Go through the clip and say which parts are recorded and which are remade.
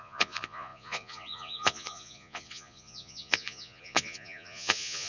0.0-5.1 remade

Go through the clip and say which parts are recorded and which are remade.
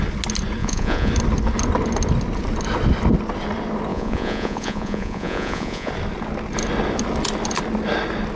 0.0-0.6 recorded; 0.6-1.1 remade; 1.1-3.9 recorded; 3.9-5.9 remade; 5.9-8.4 recorded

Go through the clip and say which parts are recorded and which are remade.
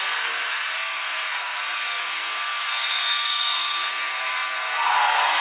0.0-5.4 remade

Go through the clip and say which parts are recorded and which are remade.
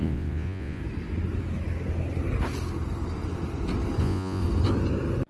0.0-0.8 remade; 0.8-4.0 recorded; 4.0-4.4 remade; 4.4-5.3 recorded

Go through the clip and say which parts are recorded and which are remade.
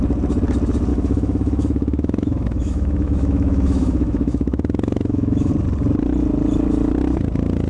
0.0-0.9 recorded; 0.9-5.5 remade; 5.5-7.7 recorded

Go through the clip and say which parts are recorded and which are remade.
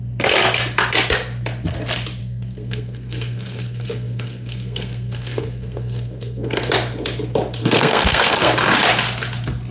0.0-2.2 recorded; 2.2-6.7 remade; 6.7-7.6 recorded; 7.6-8.5 remade; 8.5-9.7 recorded